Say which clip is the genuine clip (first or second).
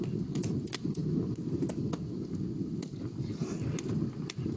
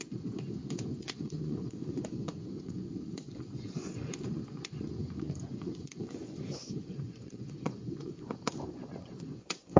first